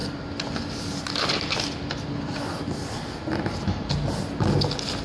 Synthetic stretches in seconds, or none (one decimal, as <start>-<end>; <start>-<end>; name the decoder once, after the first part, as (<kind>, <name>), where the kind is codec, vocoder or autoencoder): none